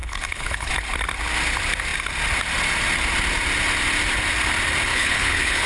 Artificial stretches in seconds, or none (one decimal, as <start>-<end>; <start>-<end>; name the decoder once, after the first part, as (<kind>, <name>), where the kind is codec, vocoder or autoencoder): 0.0-0.7 (codec, HILCodec); 4.9-5.7